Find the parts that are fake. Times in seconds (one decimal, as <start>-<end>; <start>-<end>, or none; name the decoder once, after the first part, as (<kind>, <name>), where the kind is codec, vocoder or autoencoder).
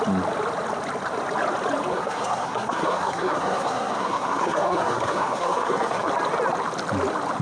1.9-6.1 (codec, SNAC)